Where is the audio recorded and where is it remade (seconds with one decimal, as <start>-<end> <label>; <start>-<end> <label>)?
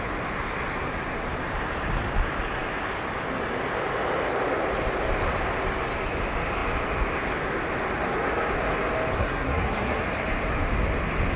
0.0-9.2 recorded; 9.2-10.0 remade; 10.0-11.4 recorded